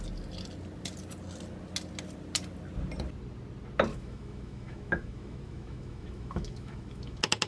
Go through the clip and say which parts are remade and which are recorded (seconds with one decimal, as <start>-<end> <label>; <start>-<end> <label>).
0.0-3.9 recorded; 3.9-7.5 remade